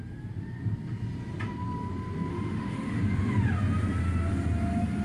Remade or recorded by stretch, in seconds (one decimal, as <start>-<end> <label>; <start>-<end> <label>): 0.0-2.3 recorded; 2.3-3.0 remade; 3.0-5.0 recorded